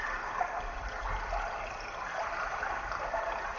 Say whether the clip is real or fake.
real